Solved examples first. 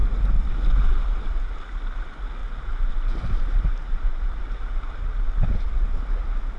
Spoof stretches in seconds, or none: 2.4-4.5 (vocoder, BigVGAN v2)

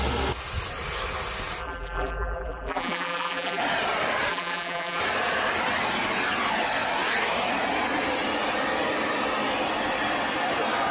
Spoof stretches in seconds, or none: 1.6-3.6 (vocoder, BigVGAN v2); 4.3-5.0

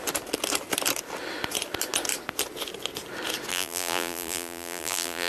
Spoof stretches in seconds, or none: 3.5-5.3 (vocoder, BigVGAN v2)

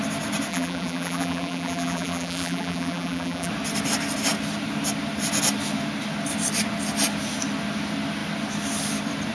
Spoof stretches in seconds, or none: 0.5-3.5 (vocoder, BigVGAN v2)

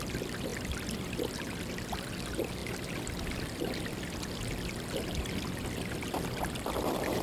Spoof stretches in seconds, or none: none